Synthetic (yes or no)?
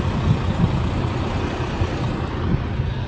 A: no